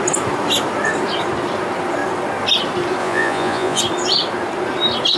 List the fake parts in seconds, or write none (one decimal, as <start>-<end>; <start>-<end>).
3.0-3.8